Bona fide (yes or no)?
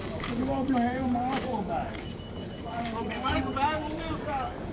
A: no